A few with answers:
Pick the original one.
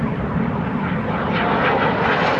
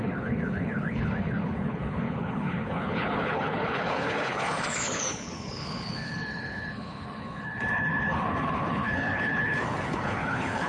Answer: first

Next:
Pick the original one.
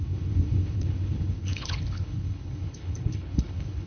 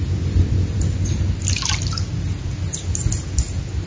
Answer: second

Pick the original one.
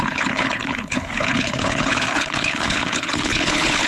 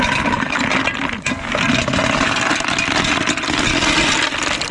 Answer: second